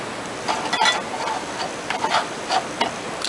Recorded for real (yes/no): yes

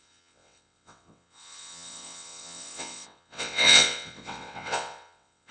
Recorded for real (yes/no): no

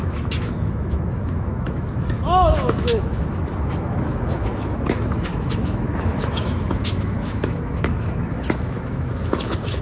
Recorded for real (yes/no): no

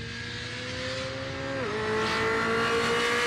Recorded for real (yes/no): yes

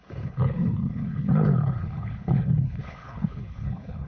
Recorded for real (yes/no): no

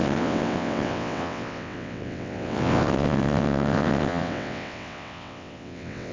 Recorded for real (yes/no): no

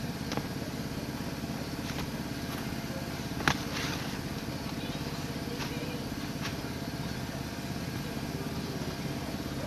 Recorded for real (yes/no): yes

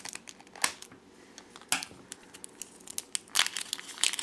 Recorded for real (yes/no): yes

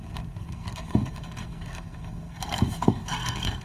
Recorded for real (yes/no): no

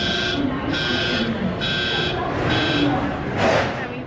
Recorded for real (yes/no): yes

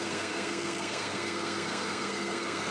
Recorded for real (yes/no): no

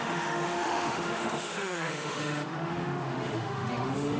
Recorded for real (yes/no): no